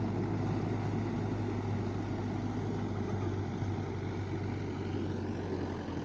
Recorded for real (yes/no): yes